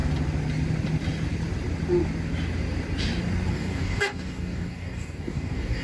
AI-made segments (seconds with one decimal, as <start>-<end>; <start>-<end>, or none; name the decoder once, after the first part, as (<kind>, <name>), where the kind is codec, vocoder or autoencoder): 3.5-5.8 (codec, DAC)